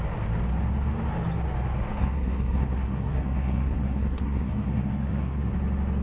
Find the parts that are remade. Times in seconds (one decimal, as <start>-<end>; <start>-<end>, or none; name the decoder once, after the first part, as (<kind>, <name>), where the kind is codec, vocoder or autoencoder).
1.9-5.5 (codec, SNAC)

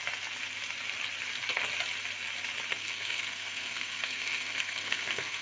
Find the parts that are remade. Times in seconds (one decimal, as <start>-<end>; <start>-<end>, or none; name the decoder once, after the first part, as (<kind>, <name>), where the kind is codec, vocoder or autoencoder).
2.7-5.4 (codec, SNAC)

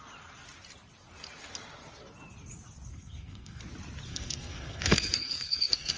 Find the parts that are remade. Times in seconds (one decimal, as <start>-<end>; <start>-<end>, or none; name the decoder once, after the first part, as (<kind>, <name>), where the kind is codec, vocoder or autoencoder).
2.9-3.6 (codec, SNAC); 4.1-6.0

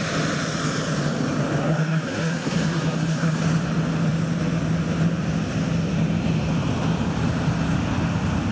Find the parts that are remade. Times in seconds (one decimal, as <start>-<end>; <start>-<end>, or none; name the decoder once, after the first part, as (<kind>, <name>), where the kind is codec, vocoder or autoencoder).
1.6-3.4 (codec, SNAC)

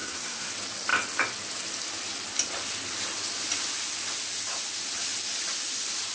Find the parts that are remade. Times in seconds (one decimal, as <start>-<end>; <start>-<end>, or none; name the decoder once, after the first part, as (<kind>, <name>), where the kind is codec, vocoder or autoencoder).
0.0-0.5 (codec, SNAC)

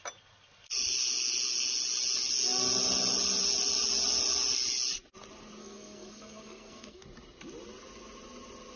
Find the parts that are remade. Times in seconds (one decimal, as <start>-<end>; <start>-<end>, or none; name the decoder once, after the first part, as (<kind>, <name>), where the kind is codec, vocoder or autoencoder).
5.6-7.0 (codec, SNAC)

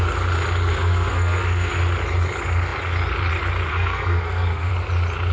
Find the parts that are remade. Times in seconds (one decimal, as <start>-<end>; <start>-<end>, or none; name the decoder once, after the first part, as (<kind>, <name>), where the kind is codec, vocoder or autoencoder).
0.7-1.7 (codec, SNAC); 3.7-4.7

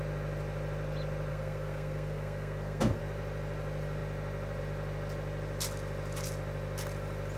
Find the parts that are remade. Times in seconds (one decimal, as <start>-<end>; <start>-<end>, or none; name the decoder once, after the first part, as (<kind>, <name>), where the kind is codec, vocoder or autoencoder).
1.3-3.0 (codec, SNAC)